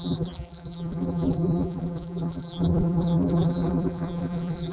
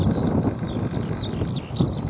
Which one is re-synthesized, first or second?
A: first